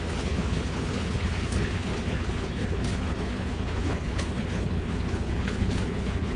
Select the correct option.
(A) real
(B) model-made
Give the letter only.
B